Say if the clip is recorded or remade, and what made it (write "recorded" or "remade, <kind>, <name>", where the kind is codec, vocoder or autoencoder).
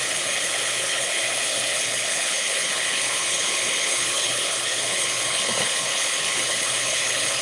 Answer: remade, codec, HILCodec